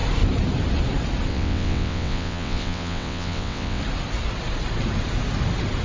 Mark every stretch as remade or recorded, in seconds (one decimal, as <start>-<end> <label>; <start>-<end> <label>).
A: 0.0-1.3 recorded; 1.3-3.8 remade; 3.8-5.8 recorded